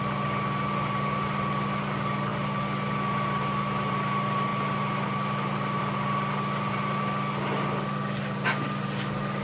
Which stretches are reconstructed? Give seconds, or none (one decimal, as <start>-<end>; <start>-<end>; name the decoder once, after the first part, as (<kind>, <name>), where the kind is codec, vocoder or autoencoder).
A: none